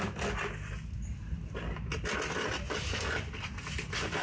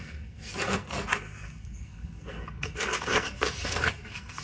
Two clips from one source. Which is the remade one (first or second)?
second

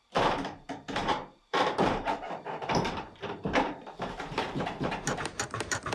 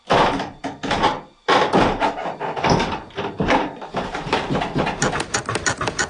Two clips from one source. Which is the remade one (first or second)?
first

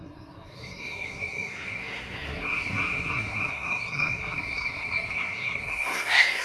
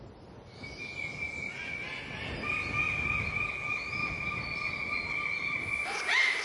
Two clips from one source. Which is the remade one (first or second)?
first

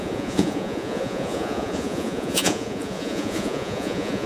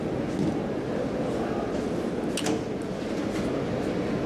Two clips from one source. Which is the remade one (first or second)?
first